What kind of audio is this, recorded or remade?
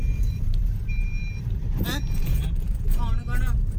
remade